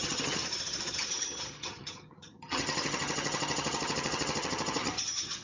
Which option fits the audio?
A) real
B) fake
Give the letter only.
B